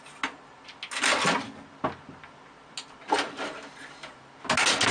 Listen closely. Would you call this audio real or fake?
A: real